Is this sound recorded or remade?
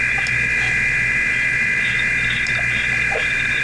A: recorded